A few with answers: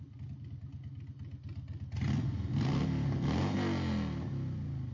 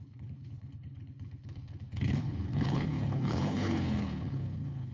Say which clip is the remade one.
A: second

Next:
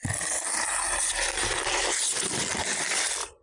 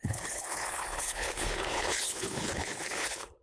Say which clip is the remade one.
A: second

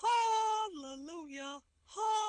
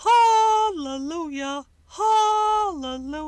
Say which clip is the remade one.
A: first